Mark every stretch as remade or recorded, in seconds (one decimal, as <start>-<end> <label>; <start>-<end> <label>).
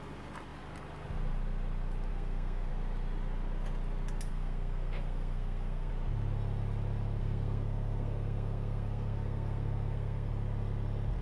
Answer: 0.0-2.1 recorded; 2.1-2.7 remade; 2.7-4.3 recorded; 4.3-5.9 remade; 5.9-7.2 recorded; 7.2-10.3 remade; 10.3-11.2 recorded